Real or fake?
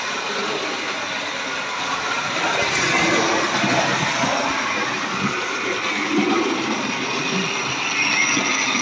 real